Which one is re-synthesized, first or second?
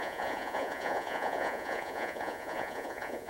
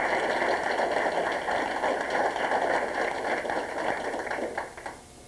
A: first